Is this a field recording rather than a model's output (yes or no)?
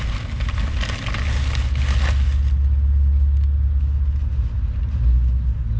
yes